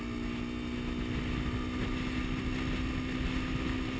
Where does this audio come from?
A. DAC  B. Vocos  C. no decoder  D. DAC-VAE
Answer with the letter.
C